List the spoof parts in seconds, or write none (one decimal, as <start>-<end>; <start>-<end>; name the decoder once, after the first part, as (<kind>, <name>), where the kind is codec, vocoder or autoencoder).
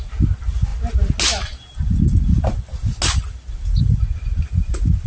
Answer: none